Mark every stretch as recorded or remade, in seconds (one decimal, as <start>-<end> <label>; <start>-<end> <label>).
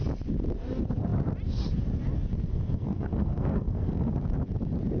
0.0-2.3 recorded; 2.3-4.1 remade; 4.1-5.0 recorded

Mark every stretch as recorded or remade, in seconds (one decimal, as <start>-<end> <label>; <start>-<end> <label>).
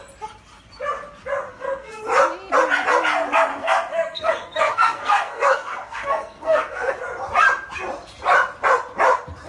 0.0-1.5 recorded; 1.5-2.0 remade; 2.0-3.5 recorded; 3.5-6.9 remade; 6.9-9.5 recorded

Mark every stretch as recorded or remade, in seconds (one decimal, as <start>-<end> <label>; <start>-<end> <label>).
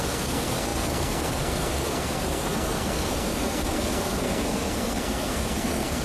0.0-6.0 remade